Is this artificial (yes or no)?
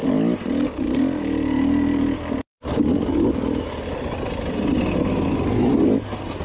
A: no